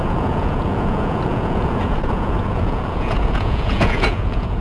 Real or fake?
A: fake